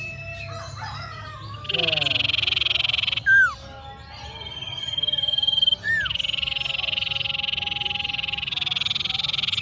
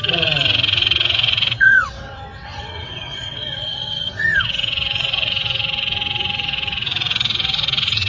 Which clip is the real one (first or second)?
first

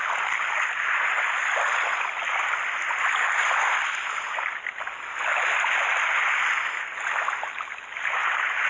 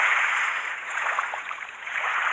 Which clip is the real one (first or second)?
first